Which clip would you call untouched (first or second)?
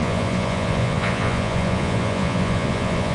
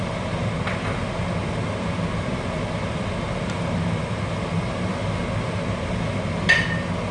second